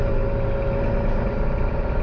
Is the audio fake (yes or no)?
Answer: no